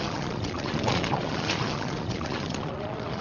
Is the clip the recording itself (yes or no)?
no